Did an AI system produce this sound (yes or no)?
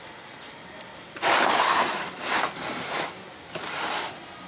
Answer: no